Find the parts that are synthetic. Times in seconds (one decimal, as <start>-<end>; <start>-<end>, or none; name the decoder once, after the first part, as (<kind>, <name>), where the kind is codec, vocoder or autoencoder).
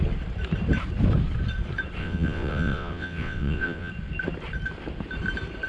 2.0-3.9 (vocoder, WaveNeXt)